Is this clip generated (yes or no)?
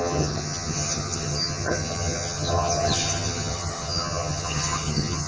yes